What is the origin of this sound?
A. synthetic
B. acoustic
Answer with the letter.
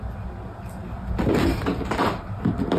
B